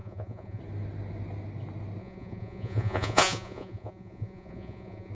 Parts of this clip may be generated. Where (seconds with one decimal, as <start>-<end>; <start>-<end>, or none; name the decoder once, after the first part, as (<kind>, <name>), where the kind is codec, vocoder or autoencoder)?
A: 0.0-0.6 (vocoder, Vocos); 2.0-5.1